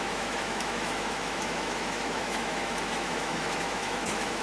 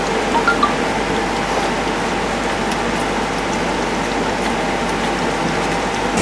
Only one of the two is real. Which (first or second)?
second